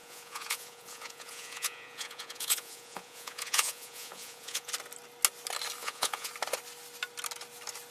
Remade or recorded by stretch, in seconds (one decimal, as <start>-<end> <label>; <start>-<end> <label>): 0.0-4.7 remade; 4.7-5.8 recorded; 5.8-6.3 remade; 6.3-7.9 recorded